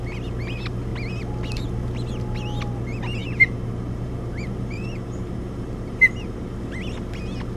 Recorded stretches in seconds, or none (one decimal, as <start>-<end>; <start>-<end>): 0.0-3.2; 6.6-7.6